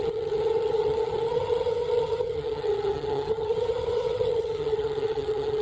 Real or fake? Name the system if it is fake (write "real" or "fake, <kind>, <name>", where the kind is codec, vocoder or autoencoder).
fake, vocoder, HiFi-GAN